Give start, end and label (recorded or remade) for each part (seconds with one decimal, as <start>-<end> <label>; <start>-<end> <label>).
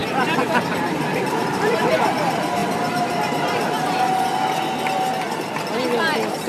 0.0-2.1 remade; 2.1-6.5 recorded